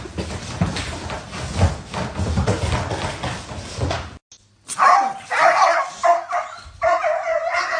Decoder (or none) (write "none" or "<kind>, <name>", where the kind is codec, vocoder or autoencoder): none